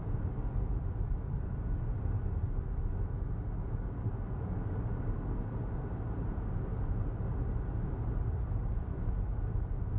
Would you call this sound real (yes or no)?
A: yes